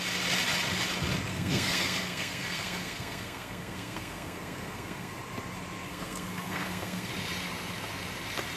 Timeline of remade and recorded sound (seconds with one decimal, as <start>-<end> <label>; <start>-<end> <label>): 0.0-1.3 recorded; 1.3-5.1 remade; 5.1-5.9 recorded; 5.9-7.1 remade; 7.1-8.6 recorded